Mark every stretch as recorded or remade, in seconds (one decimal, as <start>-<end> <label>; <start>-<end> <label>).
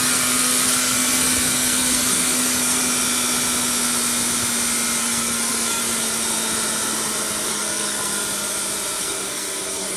0.0-2.8 remade; 2.8-5.0 recorded; 5.0-5.8 remade; 5.8-7.5 recorded; 7.5-8.1 remade; 8.1-9.0 recorded; 9.0-10.0 remade